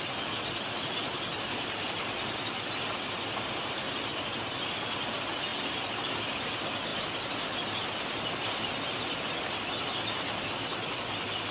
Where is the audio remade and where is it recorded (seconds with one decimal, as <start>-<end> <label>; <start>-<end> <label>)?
0.0-11.5 recorded